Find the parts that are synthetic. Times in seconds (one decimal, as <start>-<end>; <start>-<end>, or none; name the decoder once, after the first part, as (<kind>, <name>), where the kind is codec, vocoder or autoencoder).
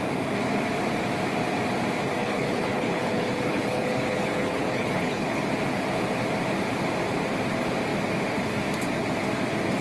2.2-5.4 (codec, HILCodec)